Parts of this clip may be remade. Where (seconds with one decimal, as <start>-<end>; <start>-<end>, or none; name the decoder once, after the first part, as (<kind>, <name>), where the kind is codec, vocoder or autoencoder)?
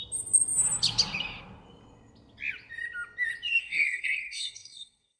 3.6-5.2 (codec, SNAC)